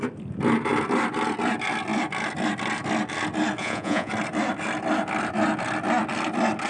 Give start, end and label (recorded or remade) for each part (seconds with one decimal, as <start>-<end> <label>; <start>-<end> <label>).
0.0-3.6 recorded; 3.6-4.1 remade; 4.1-6.7 recorded